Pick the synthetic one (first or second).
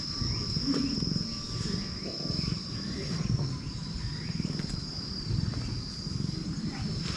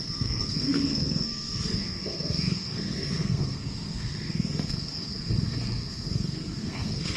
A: second